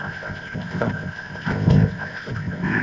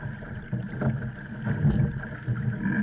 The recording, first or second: second